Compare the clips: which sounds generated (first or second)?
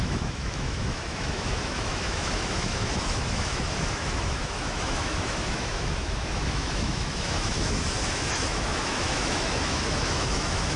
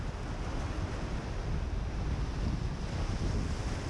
first